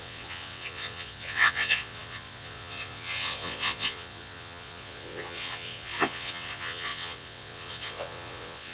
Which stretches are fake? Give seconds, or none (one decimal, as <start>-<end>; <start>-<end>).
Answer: 0.0-8.7